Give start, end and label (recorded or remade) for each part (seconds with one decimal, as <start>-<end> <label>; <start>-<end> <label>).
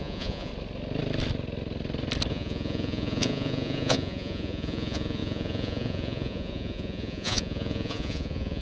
0.0-0.5 remade; 0.5-2.3 recorded; 2.3-8.6 remade